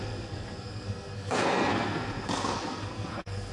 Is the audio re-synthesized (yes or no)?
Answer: yes